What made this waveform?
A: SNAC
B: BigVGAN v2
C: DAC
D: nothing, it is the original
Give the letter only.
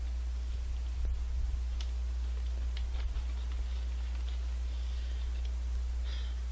D